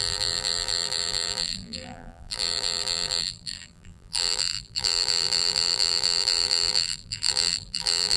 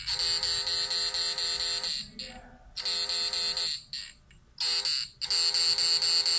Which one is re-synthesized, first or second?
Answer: first